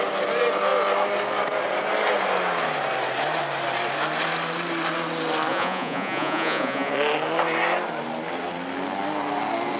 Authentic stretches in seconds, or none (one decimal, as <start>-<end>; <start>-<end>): 0.0-5.5; 6.9-9.8